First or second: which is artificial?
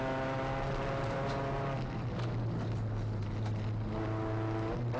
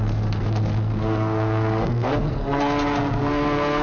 second